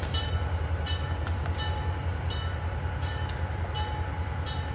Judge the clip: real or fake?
real